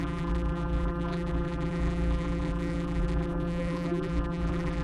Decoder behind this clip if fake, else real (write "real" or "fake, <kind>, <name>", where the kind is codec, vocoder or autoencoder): fake, vocoder, BigVGAN v2